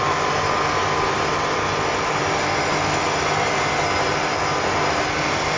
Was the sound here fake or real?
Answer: real